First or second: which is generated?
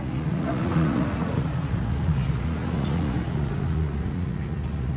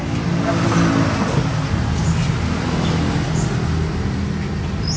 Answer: first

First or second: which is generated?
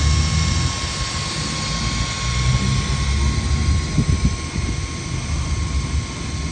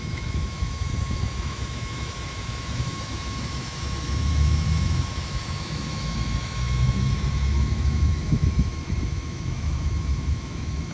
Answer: second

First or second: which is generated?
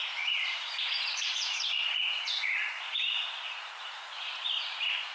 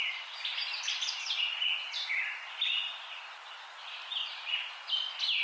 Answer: first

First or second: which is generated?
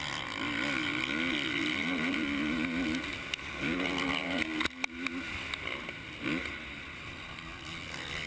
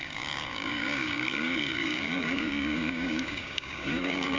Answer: second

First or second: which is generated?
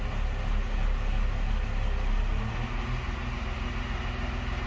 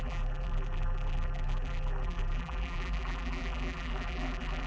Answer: second